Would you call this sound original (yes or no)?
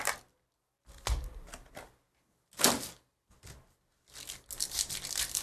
yes